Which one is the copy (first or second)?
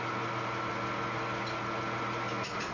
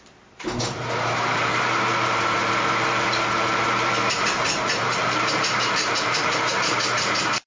second